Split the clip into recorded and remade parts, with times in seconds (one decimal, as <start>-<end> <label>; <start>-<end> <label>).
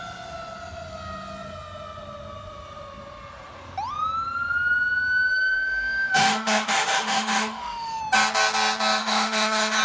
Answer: 0.0-5.3 recorded; 5.3-8.0 remade; 8.0-9.0 recorded; 9.0-9.8 remade